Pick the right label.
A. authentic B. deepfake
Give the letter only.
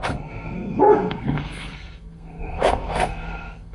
B